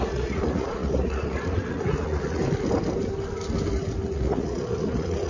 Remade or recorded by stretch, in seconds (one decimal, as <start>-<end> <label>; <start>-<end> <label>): 0.0-2.4 remade; 2.4-4.1 recorded; 4.1-5.3 remade